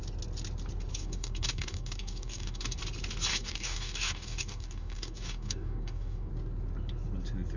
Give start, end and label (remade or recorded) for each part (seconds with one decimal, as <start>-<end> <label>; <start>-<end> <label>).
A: 0.0-0.9 recorded; 0.9-2.8 remade; 2.8-3.3 recorded; 3.3-6.3 remade; 6.3-7.6 recorded